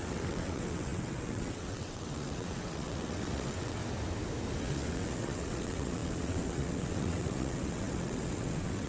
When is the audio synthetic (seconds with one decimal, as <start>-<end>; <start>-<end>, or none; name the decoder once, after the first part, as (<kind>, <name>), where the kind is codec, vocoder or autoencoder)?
0.0-3.8 (vocoder, WaveNeXt); 4.6-8.9